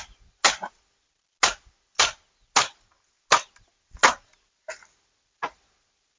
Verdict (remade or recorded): recorded